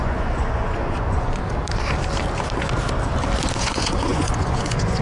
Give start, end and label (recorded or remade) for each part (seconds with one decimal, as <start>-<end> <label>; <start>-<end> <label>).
0.0-1.4 remade; 1.4-3.6 recorded; 3.6-5.0 remade